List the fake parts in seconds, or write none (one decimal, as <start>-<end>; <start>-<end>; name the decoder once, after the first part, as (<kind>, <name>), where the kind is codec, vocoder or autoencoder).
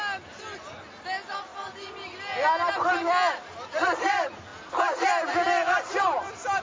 none